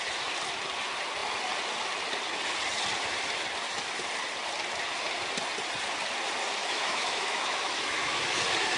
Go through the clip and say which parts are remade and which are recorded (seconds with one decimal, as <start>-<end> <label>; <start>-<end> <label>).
0.0-6.6 recorded; 6.6-8.4 remade; 8.4-8.8 recorded